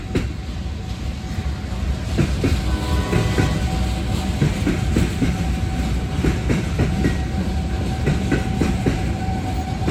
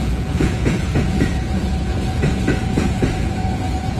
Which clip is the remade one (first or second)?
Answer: second